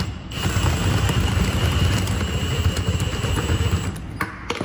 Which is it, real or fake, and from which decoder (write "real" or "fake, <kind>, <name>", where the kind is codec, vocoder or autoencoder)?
real